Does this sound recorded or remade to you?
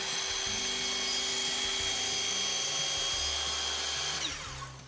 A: recorded